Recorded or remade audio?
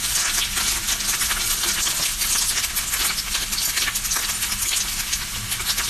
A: recorded